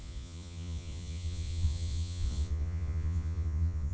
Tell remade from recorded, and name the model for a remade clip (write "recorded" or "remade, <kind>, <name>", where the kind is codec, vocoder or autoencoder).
remade, vocoder, Vocos